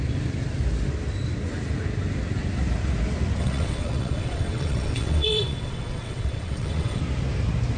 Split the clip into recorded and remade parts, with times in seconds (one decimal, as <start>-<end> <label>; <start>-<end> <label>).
0.0-3.4 recorded; 3.4-7.0 remade; 7.0-7.8 recorded